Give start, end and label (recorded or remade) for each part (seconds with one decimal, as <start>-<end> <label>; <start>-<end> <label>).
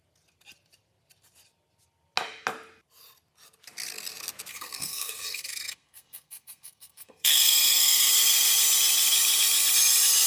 0.0-4.5 recorded; 4.5-8.1 remade; 8.1-10.3 recorded